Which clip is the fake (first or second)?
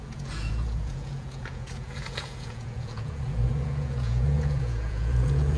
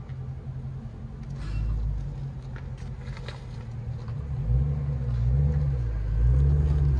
first